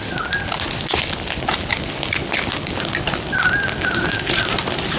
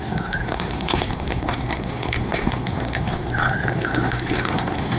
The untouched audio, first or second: first